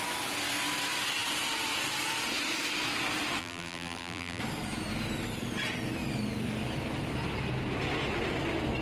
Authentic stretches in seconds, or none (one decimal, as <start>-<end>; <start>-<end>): 0.0-3.4; 4.4-8.8